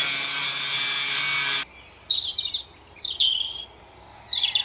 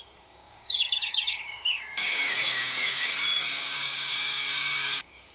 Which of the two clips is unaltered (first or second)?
first